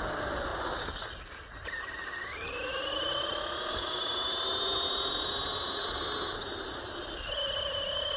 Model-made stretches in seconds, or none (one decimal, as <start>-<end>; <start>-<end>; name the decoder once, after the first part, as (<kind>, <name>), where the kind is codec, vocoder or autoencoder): none